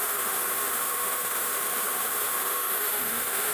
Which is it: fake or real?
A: fake